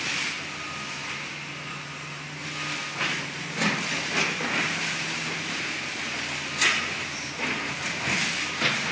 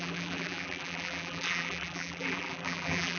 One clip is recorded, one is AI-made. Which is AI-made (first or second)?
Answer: second